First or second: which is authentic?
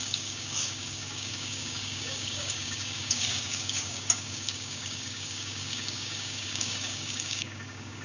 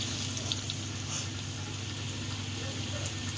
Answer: second